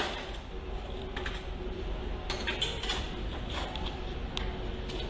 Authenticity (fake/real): real